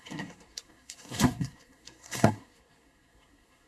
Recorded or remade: remade